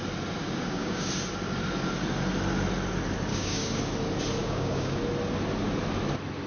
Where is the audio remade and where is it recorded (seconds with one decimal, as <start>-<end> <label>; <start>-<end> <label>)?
0.0-0.4 recorded; 0.4-1.1 remade; 1.1-3.3 recorded; 3.3-3.8 remade; 3.8-4.4 recorded; 4.4-5.0 remade; 5.0-6.5 recorded